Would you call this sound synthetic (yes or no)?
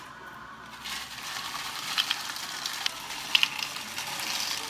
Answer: no